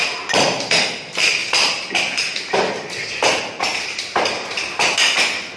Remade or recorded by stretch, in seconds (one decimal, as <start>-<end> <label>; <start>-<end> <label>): 0.0-5.6 recorded